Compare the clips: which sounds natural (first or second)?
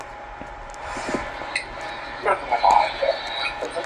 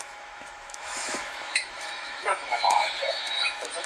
first